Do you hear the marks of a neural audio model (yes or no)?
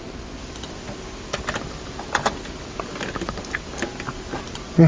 no